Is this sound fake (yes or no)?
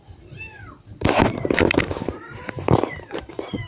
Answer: yes